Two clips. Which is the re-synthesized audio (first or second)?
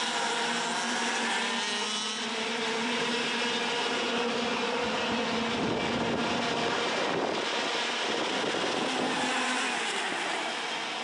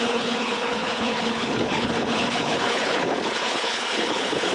second